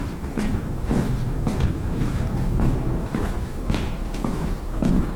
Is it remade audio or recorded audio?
remade